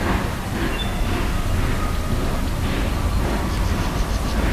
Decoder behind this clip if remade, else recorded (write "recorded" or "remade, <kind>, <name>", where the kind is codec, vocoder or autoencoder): recorded